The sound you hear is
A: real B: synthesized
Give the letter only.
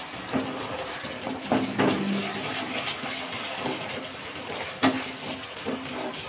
A